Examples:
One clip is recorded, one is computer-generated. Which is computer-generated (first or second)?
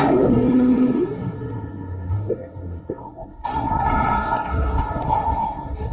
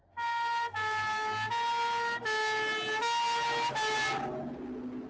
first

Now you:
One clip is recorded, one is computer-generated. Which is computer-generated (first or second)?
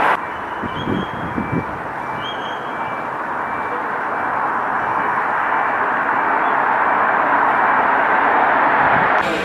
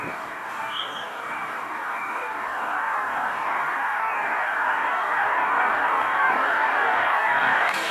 second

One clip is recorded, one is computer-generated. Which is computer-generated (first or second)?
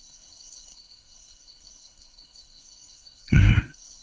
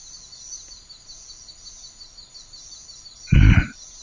first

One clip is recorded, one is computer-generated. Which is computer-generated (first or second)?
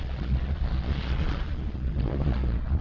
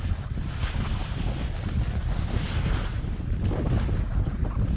first